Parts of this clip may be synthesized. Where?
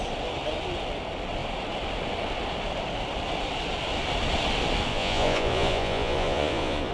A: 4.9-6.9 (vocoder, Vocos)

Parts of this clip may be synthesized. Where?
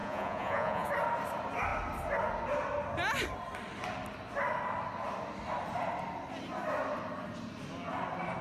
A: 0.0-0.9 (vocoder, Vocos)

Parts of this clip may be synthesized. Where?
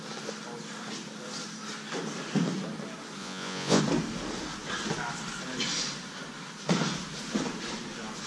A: 3.2-3.8 (vocoder, Vocos)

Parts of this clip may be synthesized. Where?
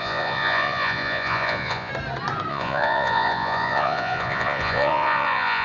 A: 0.0-1.9 (vocoder, Vocos); 2.5-5.6